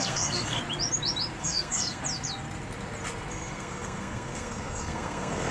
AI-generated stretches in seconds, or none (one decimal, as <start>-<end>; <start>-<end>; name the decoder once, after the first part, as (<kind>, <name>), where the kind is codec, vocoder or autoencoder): 0.0-0.6 (codec, SNAC); 1.4-2.0; 3.3-5.5